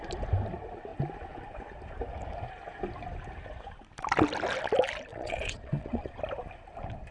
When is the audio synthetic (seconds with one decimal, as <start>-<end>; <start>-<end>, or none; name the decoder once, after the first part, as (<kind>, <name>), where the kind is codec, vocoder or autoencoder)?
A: 5.1-6.2 (vocoder, Vocos)

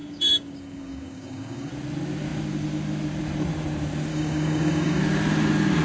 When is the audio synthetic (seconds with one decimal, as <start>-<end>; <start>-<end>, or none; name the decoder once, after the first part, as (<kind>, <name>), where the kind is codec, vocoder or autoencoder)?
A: 0.0-1.7 (codec, DAC); 4.1-5.0

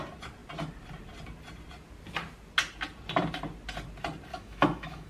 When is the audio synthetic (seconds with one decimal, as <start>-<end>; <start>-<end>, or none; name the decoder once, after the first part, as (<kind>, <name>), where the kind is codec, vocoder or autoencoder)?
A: 4.3-5.1 (autoencoder, DAC-VAE)

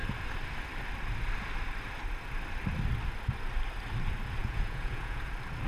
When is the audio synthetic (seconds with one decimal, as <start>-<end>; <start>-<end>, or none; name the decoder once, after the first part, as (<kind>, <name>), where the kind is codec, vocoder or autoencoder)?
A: 4.4-5.3 (vocoder, Vocos)

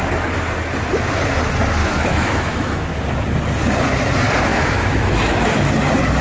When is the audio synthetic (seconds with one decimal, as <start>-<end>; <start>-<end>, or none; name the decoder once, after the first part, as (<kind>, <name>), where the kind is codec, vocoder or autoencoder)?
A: 1.8-3.0 (autoencoder, DAC-VAE); 4.5-5.7

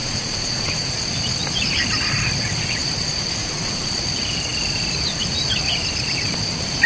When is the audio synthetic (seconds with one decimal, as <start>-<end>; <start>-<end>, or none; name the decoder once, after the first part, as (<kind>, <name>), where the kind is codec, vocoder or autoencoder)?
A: 0.0-0.9 (vocoder, Vocos); 3.4-3.9

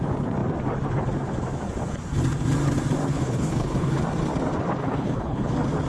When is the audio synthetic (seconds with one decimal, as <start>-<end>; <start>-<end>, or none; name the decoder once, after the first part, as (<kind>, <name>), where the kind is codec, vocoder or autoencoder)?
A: 3.1-4.0 (codec, HILCodec); 4.8-5.5

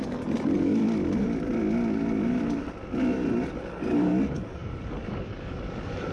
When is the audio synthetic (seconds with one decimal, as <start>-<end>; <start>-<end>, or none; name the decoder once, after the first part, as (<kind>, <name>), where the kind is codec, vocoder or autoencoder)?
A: 0.0-0.8 (codec, DAC); 3.7-6.1